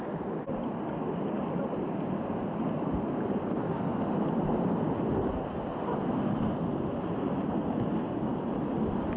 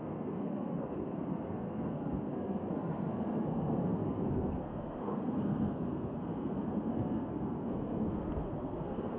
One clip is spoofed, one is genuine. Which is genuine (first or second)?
first